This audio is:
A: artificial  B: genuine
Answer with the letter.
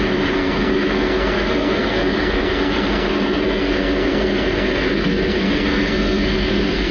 A